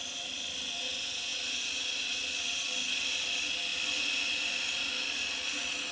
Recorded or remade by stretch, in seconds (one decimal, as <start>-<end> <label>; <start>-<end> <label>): 0.0-3.7 recorded; 3.7-5.0 remade; 5.0-5.9 recorded